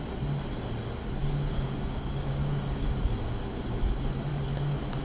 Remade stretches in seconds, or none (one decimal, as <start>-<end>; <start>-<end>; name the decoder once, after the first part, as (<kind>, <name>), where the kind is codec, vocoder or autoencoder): 1.2-3.0 (codec, DAC)